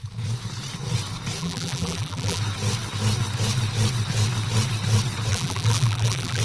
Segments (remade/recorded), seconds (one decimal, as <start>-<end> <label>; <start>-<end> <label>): 0.0-1.4 recorded; 1.4-2.4 remade; 2.4-5.3 recorded; 5.3-6.4 remade